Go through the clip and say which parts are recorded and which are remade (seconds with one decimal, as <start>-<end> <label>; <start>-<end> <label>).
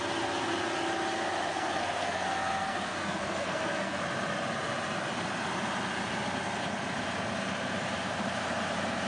0.0-1.5 recorded; 1.5-4.0 remade; 4.0-9.1 recorded